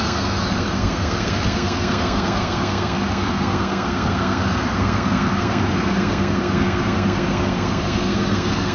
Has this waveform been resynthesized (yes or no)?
yes